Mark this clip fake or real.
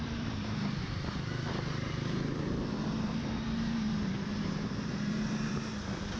fake